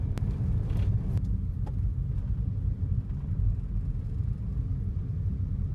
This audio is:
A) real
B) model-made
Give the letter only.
A